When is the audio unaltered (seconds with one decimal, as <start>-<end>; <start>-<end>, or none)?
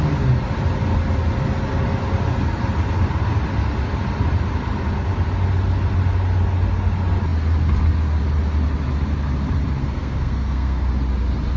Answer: 0.0-9.8; 10.9-11.6